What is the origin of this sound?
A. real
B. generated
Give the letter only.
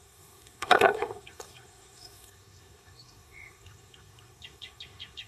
B